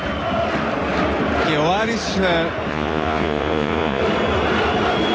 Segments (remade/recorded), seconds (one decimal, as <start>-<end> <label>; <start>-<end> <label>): 0.0-2.7 recorded; 2.7-4.0 remade; 4.0-5.1 recorded